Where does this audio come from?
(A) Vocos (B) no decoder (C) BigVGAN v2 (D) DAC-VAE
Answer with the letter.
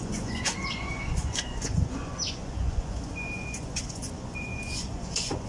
A